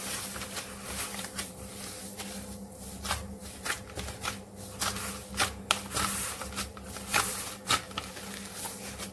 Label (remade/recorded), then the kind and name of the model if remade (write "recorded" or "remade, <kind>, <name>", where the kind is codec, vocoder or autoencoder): recorded